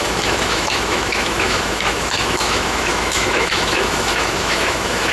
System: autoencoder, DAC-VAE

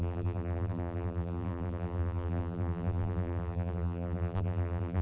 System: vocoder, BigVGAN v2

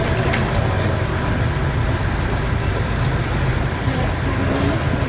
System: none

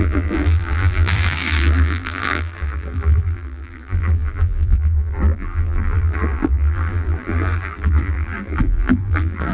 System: vocoder, BigVGAN v2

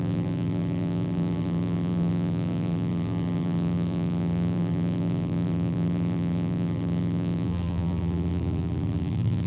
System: vocoder, BigVGAN v2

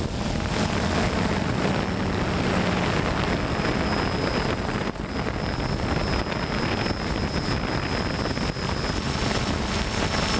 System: none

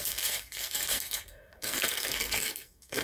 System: codec, SNAC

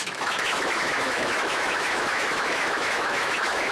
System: autoencoder, DAC-VAE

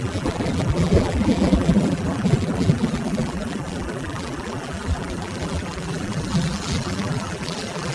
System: vocoder, BigVGAN v2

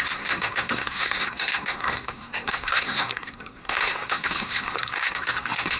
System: codec, SNAC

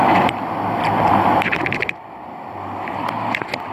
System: none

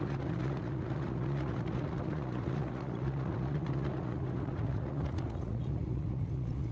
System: vocoder, Vocos